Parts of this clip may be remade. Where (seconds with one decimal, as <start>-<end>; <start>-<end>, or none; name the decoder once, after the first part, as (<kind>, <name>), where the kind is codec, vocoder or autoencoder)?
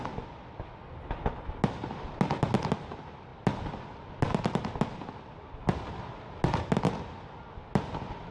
none